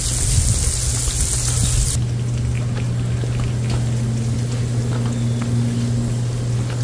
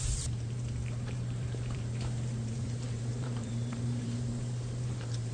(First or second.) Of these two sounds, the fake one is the second